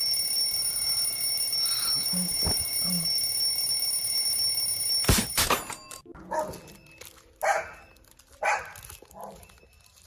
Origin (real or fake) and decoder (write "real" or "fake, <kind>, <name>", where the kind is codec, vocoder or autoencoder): real